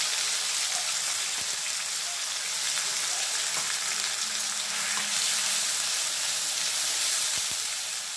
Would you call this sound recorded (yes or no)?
yes